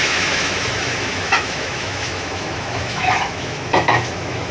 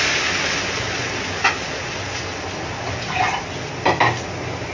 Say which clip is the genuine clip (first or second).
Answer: second